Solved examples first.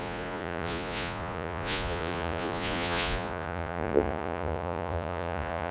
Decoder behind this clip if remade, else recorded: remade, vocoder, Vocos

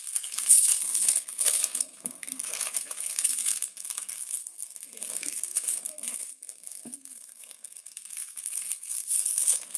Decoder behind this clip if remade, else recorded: remade, codec, SNAC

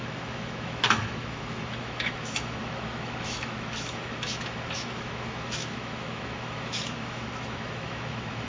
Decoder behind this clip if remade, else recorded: remade, autoencoder, DAC-VAE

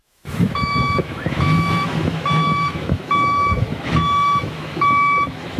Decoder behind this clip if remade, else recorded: remade, autoencoder, DAC-VAE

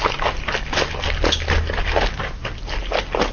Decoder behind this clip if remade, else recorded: recorded